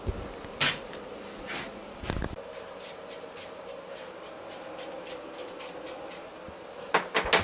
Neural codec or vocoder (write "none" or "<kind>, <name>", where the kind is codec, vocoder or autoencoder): none